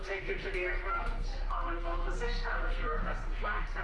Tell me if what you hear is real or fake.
fake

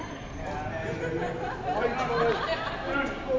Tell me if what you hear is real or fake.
real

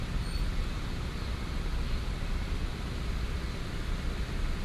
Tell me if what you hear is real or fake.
real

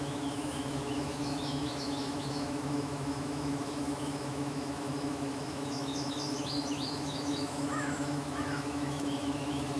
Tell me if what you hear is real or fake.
fake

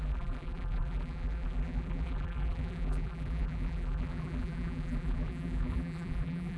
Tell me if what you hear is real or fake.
fake